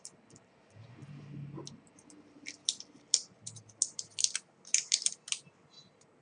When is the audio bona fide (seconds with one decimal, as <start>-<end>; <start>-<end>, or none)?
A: 0.0-6.2